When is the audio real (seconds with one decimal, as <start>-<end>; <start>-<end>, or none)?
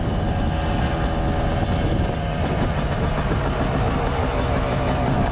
0.0-1.9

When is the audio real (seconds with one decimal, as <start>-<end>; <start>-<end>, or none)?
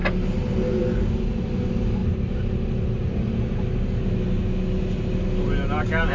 0.0-6.1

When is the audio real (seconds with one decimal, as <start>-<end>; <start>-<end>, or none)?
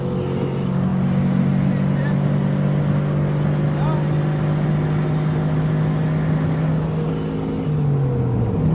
0.0-8.7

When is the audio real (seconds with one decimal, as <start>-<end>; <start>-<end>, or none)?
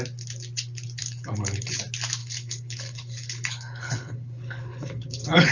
0.0-1.0; 1.8-2.2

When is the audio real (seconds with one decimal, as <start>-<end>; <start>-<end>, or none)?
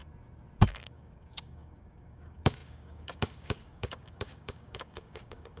0.0-0.7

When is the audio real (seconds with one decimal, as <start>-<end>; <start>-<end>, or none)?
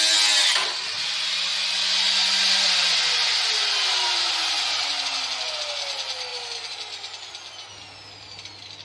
0.0-8.8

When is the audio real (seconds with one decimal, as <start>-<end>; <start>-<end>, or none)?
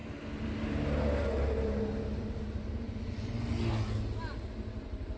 0.0-5.2